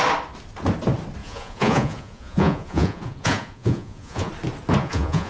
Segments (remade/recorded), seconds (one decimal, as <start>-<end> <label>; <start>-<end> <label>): 0.0-1.2 recorded; 1.2-4.3 remade; 4.3-4.8 recorded; 4.8-5.3 remade